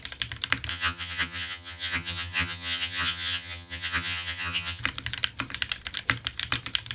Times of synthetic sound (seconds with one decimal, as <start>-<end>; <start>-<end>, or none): 0.7-4.8